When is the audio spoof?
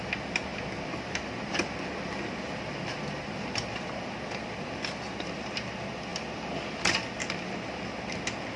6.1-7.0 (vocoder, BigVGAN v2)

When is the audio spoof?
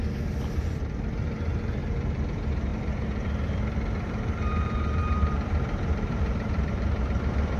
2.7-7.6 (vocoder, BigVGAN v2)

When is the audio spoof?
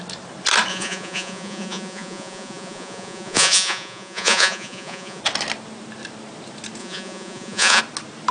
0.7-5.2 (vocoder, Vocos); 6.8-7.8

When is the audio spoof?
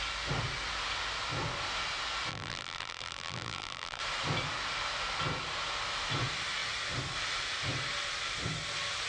2.3-4.0 (vocoder, BigVGAN v2)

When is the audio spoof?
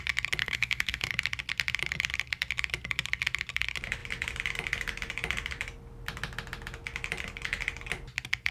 0.4-1.1 (codec, SNAC)